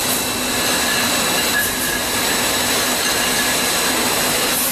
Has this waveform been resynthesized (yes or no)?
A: no